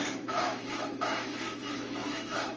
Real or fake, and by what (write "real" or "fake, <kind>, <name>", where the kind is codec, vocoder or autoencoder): fake, autoencoder, DAC-VAE